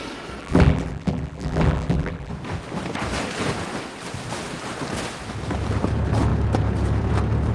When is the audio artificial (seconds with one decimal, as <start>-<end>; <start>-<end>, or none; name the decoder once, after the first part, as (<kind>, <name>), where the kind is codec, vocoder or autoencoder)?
0.4-2.3 (vocoder, BigVGAN v2)